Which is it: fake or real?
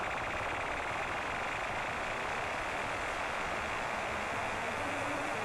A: real